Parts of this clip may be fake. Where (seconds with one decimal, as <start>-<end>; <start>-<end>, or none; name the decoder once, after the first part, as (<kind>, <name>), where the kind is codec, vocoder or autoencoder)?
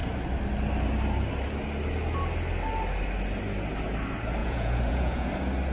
4.4-5.3 (vocoder, Vocos)